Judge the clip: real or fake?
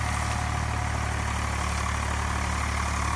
real